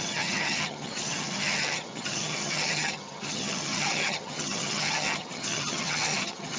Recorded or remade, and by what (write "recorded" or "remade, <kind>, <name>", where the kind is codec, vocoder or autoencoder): remade, vocoder, HiFi-GAN